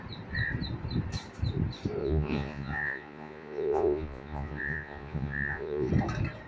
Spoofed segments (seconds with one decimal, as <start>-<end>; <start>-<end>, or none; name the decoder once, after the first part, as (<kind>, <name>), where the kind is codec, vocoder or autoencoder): 2.0-5.9 (vocoder, Vocos)